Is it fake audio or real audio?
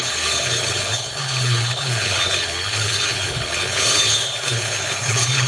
fake